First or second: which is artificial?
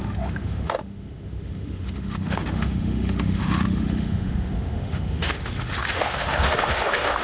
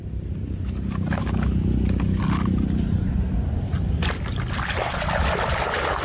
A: first